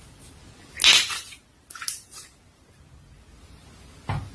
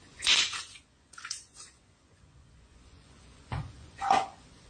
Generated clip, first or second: second